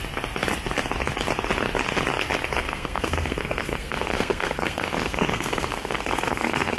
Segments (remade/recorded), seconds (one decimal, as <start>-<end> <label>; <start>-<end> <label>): 0.0-2.6 recorded; 2.6-6.8 remade